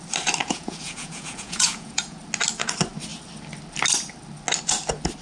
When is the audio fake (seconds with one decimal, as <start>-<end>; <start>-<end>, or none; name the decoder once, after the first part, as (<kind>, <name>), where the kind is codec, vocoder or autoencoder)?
0.4-2.2 (vocoder, Vocos)